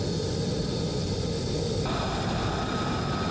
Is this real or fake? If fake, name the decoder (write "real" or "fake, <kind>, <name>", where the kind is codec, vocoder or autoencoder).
real